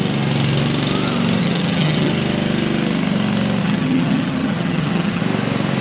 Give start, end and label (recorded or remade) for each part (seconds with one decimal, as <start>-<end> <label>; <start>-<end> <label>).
0.0-1.4 recorded; 1.4-2.1 remade; 2.1-3.6 recorded; 3.6-5.2 remade; 5.2-5.8 recorded